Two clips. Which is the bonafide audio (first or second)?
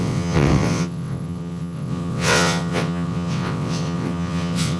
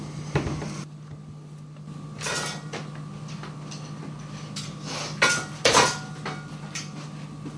second